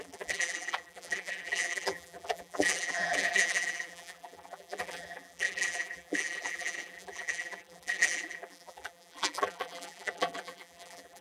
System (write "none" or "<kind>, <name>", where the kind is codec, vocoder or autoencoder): vocoder, BigVGAN v2